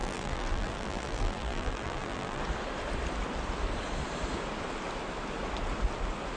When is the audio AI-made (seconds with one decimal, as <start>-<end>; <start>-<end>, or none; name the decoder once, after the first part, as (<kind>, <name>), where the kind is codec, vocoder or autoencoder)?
0.0-2.4 (vocoder, BigVGAN v2)